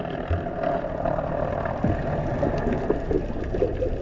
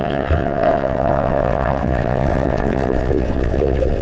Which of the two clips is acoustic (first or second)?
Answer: first